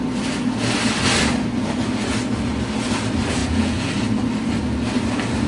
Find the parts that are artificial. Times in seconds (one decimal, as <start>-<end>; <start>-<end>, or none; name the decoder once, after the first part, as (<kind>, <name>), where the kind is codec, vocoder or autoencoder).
3.4-3.9 (vocoder, Vocos)